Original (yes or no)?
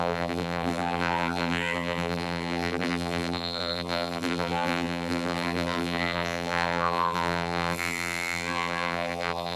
no